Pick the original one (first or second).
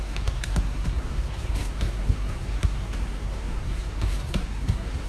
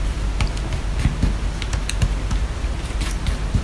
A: second